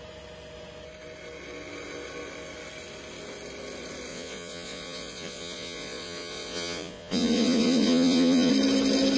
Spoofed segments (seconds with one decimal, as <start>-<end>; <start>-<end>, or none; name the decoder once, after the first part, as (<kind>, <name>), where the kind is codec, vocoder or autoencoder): 4.1-8.5 (vocoder, Vocos)